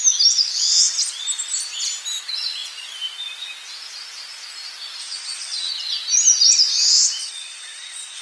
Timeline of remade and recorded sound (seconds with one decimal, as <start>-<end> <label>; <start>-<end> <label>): 0.0-5.0 recorded; 5.0-5.7 remade; 5.7-7.2 recorded; 7.2-8.2 remade